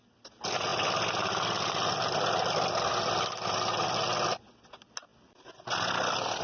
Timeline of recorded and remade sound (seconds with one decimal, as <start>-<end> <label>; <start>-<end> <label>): 0.0-6.4 recorded